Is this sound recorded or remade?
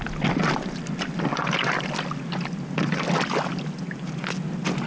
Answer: recorded